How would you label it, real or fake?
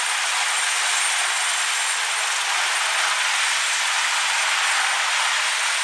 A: real